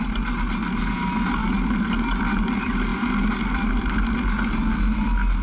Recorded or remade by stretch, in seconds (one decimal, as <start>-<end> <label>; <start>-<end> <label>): 0.0-5.4 recorded